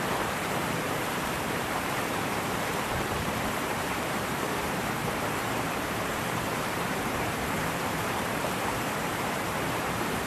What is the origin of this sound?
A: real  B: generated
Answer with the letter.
B